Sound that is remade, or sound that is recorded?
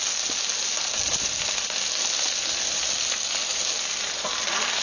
recorded